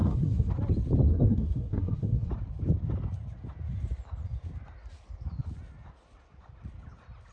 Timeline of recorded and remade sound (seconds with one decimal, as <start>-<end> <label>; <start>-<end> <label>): 0.0-0.5 remade; 0.5-1.1 recorded; 1.1-2.3 remade; 2.3-7.3 recorded